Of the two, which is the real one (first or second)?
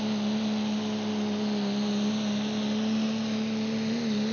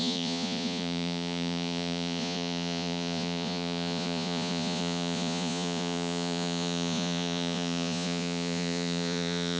first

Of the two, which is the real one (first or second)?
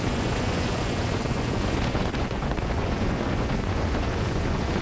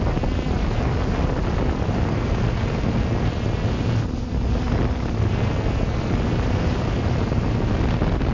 second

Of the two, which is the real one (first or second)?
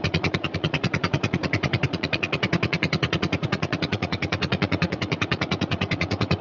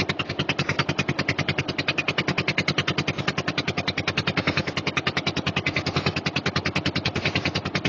second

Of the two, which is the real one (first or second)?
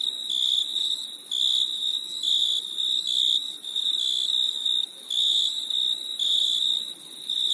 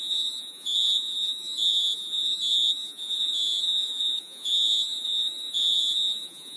first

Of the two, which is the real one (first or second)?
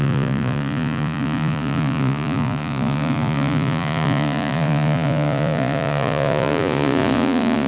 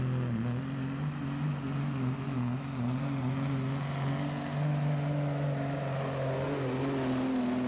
second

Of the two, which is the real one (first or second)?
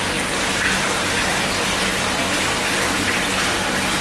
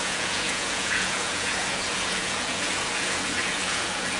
first